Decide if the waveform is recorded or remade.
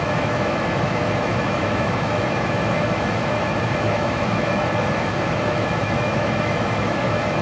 remade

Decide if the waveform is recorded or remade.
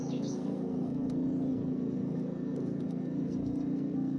remade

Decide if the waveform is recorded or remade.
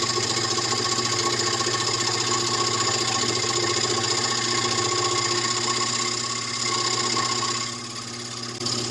recorded